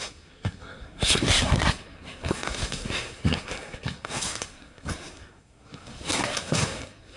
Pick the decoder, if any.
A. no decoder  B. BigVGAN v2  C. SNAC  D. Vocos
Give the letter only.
C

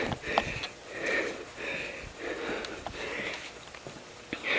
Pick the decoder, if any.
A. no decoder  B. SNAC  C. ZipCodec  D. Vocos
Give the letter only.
A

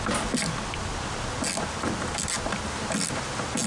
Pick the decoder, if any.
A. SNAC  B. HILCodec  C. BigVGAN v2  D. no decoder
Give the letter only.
D